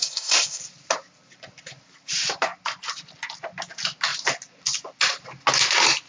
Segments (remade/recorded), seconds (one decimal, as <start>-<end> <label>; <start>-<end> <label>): 0.0-0.6 remade; 0.6-6.1 recorded

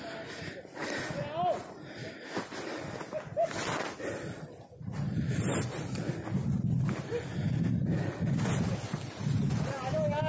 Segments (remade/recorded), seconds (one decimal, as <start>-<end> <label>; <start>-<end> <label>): 0.0-10.3 recorded

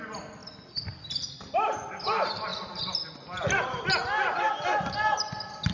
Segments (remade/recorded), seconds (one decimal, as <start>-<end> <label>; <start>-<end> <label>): 0.0-5.7 recorded

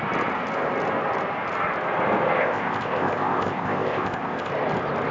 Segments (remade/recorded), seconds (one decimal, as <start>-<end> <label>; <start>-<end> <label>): 0.0-2.4 recorded; 2.4-4.5 remade; 4.5-5.1 recorded

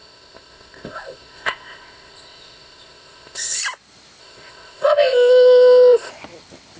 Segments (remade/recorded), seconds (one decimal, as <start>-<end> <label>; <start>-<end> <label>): 0.0-3.6 remade; 3.6-4.2 recorded; 4.2-6.1 remade; 6.1-6.8 recorded

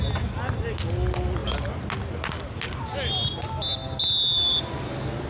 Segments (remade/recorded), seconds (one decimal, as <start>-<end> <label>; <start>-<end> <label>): 0.0-5.3 recorded

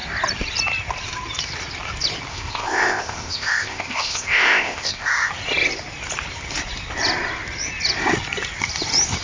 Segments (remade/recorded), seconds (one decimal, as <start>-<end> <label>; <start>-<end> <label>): 0.0-2.3 recorded; 2.3-5.3 remade; 5.3-9.2 recorded

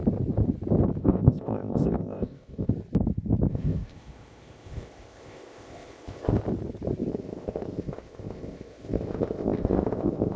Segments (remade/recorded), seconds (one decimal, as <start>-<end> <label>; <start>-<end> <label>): 0.0-1.0 recorded; 1.0-2.7 remade; 2.7-3.5 recorded; 3.5-6.4 remade; 6.4-7.1 recorded; 7.1-10.4 remade